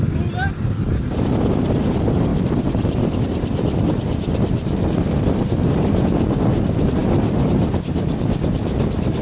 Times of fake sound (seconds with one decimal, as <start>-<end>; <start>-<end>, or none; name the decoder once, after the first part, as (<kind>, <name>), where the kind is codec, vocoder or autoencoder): 2.3-3.8 (vocoder, BigVGAN v2); 7.0-7.7

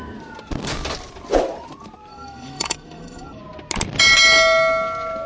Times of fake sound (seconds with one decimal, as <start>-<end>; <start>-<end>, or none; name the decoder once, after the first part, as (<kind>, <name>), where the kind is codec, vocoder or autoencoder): 2.1-3.4 (autoencoder, DAC-VAE)